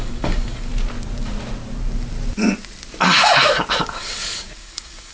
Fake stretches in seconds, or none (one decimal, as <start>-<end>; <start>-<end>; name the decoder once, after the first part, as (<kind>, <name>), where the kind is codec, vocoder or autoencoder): 0.0-0.7 (codec, DAC); 3.8-5.1